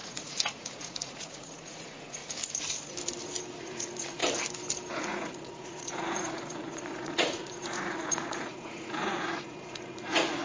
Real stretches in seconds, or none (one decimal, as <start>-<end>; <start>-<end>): 2.2-3.6; 4.2-4.9

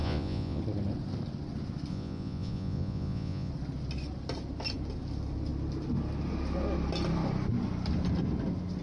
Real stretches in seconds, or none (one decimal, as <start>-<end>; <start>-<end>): 0.6-1.9; 3.5-8.8

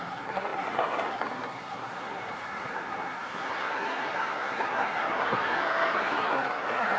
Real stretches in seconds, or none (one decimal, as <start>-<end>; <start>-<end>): none

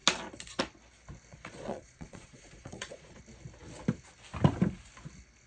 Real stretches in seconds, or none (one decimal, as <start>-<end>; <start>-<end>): 0.0-1.3; 3.2-5.5